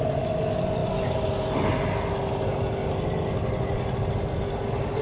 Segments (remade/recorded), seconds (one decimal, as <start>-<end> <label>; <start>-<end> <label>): 0.0-5.0 recorded